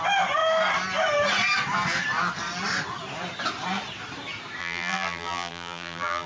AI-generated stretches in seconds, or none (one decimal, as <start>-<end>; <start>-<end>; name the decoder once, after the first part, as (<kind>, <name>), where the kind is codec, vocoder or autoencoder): 4.6-6.3 (vocoder, BigVGAN v2)